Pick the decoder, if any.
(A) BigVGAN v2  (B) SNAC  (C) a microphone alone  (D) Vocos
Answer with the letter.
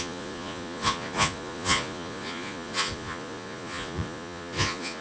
D